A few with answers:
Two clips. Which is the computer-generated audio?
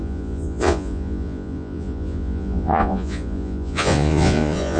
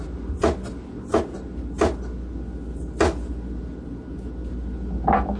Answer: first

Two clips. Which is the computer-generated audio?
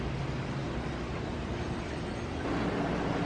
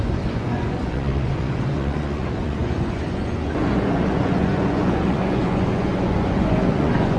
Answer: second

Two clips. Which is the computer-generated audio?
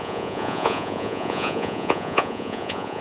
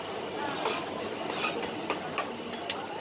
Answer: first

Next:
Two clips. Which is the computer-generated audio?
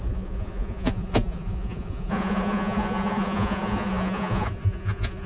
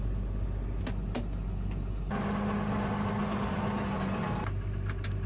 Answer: first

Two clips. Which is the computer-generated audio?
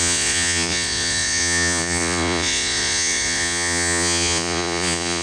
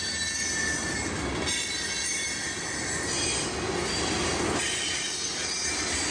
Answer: first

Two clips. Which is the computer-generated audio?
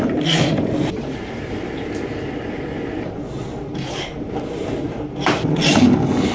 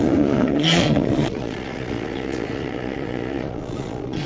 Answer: second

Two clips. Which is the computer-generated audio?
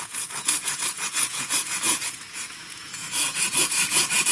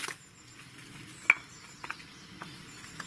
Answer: first